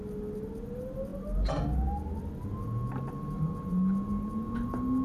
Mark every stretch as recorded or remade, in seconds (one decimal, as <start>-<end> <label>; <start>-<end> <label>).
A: 0.0-5.0 recorded